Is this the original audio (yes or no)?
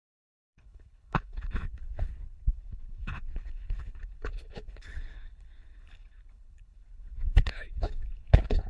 no